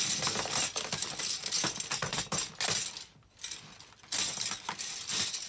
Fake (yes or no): no